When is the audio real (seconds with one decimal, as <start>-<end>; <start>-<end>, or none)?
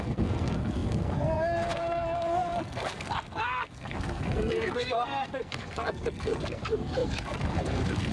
none